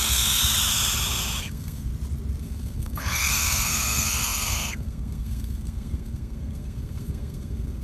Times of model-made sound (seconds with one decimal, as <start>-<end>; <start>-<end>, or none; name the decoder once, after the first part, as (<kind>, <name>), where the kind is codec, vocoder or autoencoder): 0.0-0.4 (codec, SNAC); 1.4-1.9; 2.4-7.8